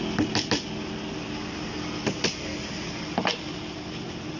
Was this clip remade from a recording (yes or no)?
no